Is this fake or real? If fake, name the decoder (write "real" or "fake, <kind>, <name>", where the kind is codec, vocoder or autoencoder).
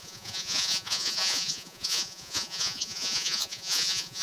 fake, vocoder, Vocos